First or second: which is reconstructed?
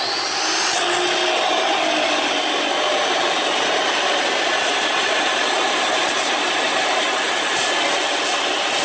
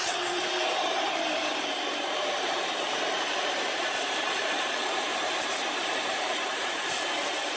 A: second